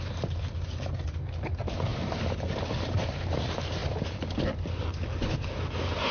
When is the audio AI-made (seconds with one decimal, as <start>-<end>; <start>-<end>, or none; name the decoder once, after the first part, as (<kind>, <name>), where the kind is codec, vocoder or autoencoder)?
1.9-3.4 (vocoder, BigVGAN v2); 3.8-4.8